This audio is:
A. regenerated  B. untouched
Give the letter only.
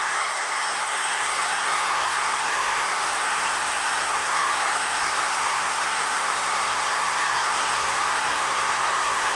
A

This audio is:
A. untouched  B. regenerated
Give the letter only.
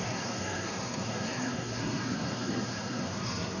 B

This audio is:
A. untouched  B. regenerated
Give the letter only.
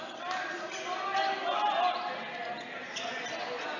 A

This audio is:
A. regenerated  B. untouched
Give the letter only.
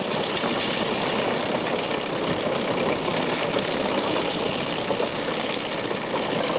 B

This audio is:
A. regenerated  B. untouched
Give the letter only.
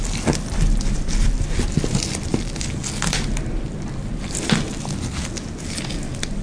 B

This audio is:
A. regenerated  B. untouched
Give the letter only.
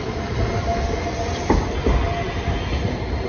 B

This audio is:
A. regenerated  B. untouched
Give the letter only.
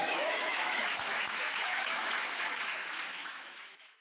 A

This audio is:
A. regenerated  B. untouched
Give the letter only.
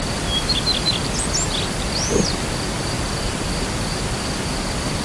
B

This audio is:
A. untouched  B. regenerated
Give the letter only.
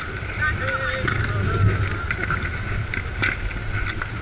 A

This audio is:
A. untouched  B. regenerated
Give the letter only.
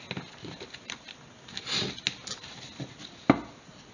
A